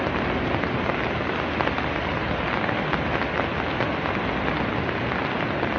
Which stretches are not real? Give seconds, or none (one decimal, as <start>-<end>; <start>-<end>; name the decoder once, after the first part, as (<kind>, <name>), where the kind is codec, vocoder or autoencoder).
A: none